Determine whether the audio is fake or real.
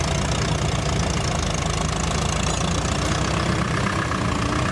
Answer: real